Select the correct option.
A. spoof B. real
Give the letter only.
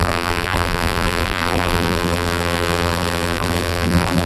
A